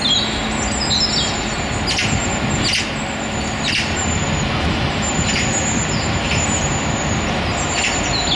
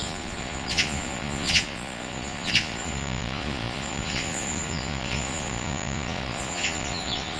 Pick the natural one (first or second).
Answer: first